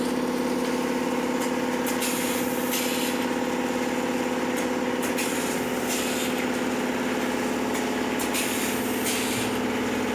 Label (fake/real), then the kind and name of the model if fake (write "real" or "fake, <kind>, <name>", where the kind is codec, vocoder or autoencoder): real